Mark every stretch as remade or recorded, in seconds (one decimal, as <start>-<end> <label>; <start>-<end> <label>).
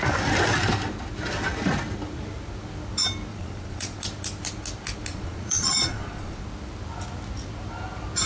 0.0-3.3 recorded; 3.3-4.0 remade; 4.0-5.1 recorded; 5.1-6.4 remade; 6.4-8.3 recorded